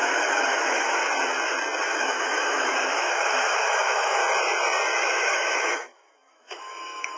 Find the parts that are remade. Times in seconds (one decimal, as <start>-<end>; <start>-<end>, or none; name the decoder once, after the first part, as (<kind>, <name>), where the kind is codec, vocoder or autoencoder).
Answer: 0.0-1.0 (autoencoder, DAC-VAE); 1.8-4.2; 5.0-7.2